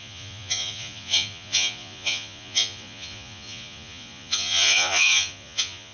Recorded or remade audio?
remade